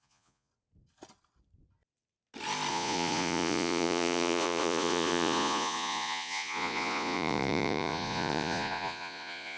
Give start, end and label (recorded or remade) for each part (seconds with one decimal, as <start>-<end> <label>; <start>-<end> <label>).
0.0-0.5 remade; 0.5-2.7 recorded; 2.7-9.6 remade

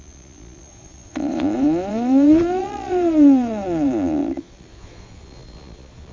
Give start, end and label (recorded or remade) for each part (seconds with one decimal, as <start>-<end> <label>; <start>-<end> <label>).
0.0-6.1 remade

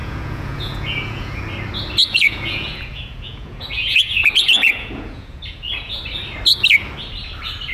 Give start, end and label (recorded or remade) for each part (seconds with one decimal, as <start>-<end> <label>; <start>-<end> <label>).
0.0-1.4 remade; 1.4-2.1 recorded; 2.1-6.0 remade; 6.0-7.7 recorded

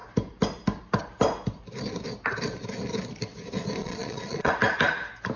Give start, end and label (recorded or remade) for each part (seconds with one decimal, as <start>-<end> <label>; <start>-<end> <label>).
0.0-3.8 recorded; 3.8-4.5 remade; 4.5-5.4 recorded

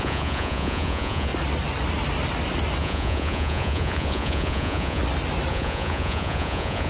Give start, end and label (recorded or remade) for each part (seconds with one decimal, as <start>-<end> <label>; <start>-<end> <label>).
0.0-1.3 remade; 1.3-2.8 recorded; 2.8-5.0 remade; 5.0-5.5 recorded; 5.5-6.9 remade

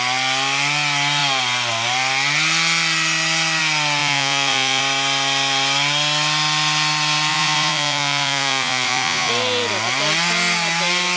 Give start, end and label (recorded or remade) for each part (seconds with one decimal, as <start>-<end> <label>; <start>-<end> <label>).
0.0-4.0 recorded; 4.0-4.8 remade; 4.8-7.3 recorded; 7.3-9.3 remade; 9.3-11.2 recorded